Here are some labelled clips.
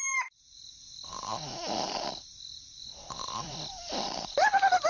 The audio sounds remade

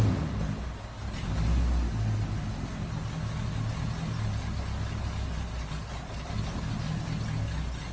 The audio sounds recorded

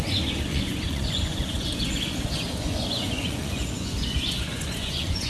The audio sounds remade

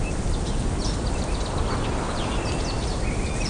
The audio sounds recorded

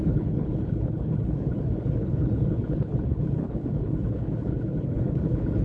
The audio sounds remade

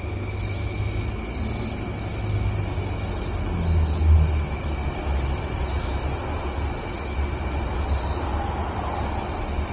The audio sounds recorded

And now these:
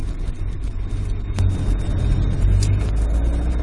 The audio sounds recorded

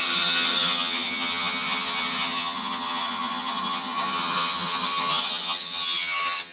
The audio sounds remade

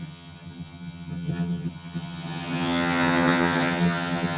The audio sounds remade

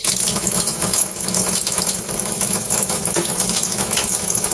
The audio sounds remade